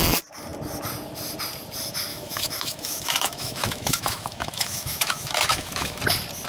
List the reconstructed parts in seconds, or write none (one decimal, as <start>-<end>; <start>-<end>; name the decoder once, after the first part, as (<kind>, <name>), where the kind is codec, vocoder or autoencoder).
2.1-6.0 (autoencoder, DAC-VAE)